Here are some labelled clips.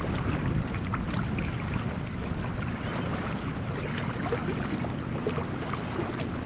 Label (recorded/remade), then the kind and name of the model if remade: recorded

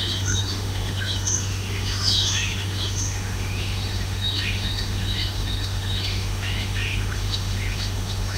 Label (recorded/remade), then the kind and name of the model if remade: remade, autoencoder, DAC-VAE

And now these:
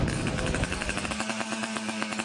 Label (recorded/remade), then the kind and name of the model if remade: remade, codec, DAC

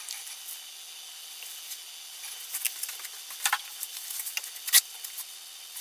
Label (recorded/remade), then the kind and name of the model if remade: recorded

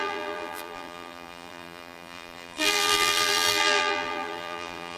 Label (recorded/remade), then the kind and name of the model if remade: remade, vocoder, BigVGAN v2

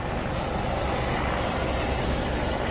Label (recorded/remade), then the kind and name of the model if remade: recorded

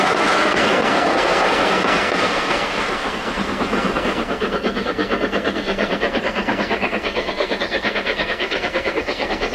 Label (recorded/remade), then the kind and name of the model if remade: remade, codec, SNAC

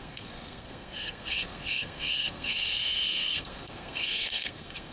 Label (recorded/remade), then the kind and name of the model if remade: remade, codec, SNAC